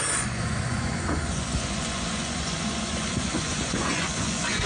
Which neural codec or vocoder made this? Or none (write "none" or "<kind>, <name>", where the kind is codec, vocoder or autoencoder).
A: vocoder, Vocos